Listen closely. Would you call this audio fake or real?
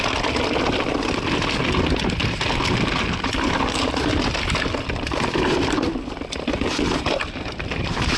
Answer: real